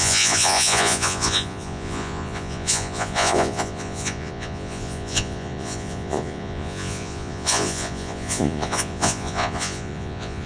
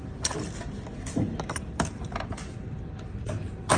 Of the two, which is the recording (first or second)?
second